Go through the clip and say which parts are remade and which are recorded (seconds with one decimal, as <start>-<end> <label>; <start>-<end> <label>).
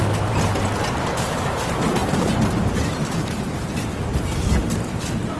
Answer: 0.0-4.1 remade; 4.1-5.4 recorded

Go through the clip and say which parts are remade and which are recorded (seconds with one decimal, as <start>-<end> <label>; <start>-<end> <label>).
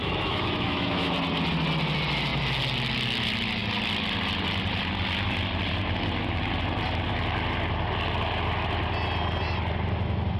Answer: 0.0-1.1 remade; 1.1-10.4 recorded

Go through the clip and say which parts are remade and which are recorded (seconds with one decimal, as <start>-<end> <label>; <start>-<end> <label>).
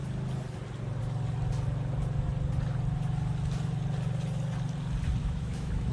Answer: 0.0-5.2 recorded; 5.2-5.9 remade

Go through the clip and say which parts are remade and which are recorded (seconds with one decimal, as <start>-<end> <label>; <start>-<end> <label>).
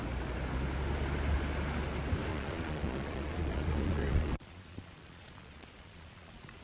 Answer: 0.0-2.3 recorded; 2.3-6.6 remade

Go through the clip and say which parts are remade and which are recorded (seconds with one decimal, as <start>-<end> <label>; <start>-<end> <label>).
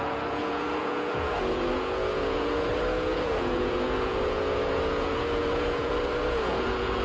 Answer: 0.0-7.0 remade